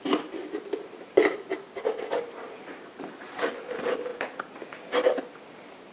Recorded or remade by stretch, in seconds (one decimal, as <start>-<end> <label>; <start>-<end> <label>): 0.0-4.1 remade; 4.1-5.9 recorded